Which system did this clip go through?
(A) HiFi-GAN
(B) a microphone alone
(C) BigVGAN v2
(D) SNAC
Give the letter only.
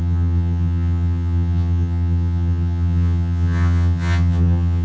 A